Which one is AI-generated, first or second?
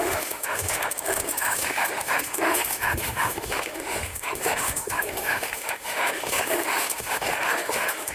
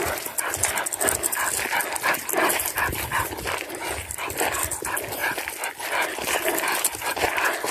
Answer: first